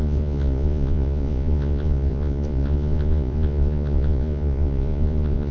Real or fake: fake